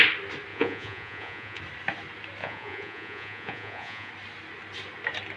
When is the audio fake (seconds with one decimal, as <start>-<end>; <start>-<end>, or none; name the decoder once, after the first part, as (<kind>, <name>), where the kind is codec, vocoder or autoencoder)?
0.5-1.6 (vocoder, Vocos); 2.4-4.1